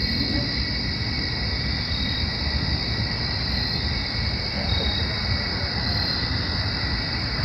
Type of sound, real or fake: real